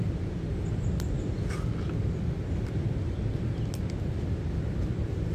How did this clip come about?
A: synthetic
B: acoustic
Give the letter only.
B